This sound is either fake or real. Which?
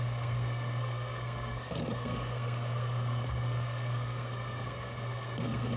fake